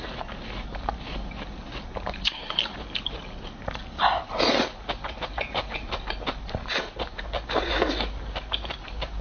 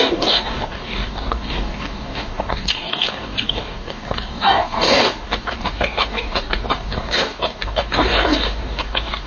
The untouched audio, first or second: first